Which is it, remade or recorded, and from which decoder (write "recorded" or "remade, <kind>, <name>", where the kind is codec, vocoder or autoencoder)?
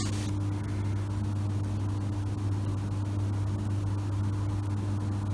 recorded